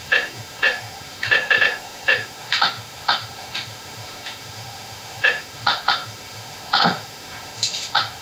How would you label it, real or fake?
fake